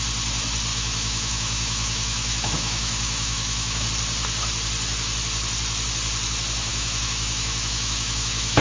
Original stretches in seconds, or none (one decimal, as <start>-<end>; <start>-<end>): 0.0-0.7; 3.9-6.7